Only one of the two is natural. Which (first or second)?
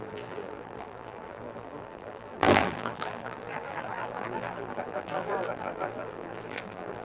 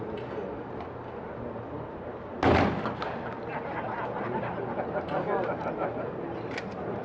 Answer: second